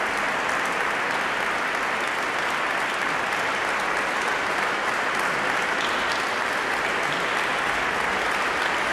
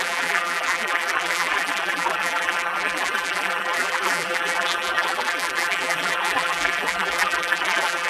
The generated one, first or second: second